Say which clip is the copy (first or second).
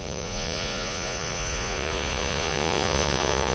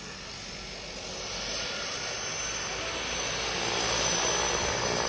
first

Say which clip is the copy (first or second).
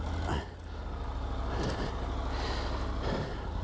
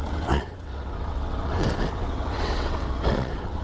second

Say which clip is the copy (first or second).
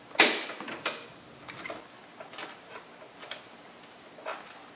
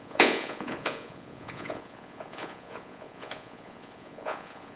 second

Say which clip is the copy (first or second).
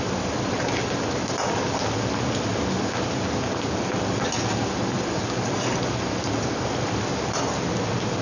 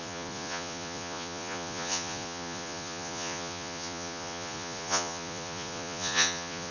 second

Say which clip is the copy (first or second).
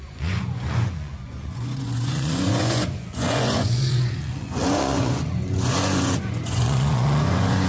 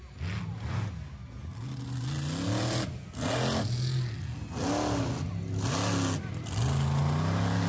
first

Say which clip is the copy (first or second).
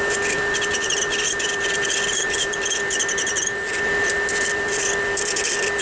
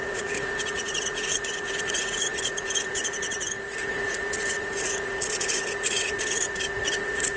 second